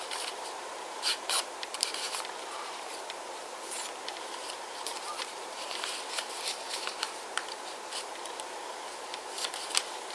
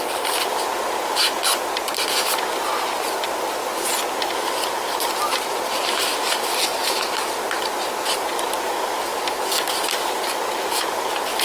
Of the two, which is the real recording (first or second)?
second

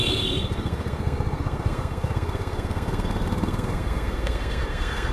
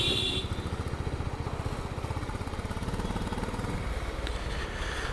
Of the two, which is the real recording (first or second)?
second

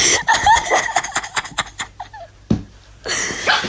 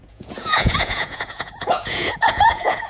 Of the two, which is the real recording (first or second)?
first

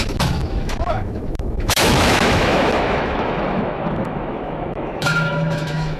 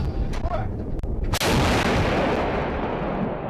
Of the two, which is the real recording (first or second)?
second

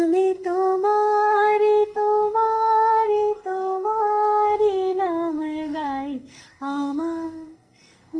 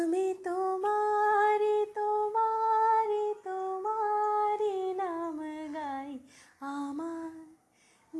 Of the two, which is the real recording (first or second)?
second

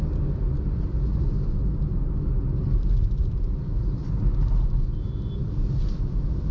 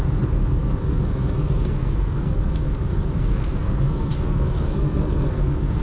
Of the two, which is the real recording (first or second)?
first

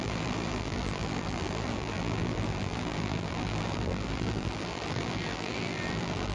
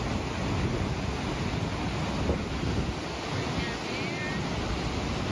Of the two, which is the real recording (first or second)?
second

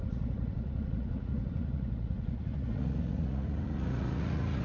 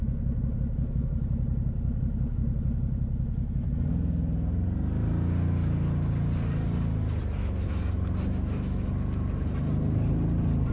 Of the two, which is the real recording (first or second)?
second